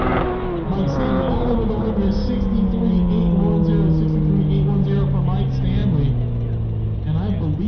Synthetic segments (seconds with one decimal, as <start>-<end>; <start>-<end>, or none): none